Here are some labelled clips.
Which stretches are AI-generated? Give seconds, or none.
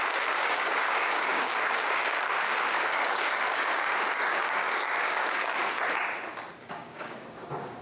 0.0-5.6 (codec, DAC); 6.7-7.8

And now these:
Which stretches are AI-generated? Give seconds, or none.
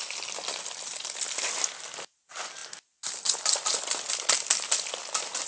none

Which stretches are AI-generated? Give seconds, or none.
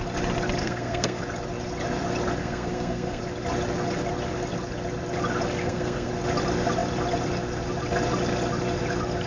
0.6-1.2 (codec, SNAC); 2.4-3.2; 5.6-6.1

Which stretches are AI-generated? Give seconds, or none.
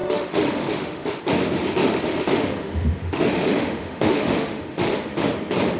0.0-1.2 (autoencoder, DAC-VAE); 1.8-5.3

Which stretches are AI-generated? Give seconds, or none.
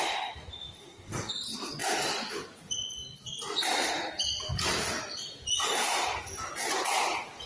0.8-1.3 (codec, SNAC)